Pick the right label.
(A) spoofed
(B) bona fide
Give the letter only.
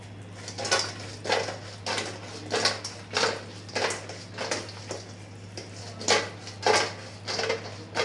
B